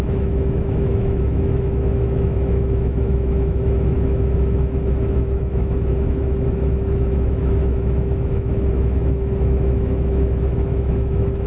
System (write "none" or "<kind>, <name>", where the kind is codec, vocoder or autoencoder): autoencoder, DAC-VAE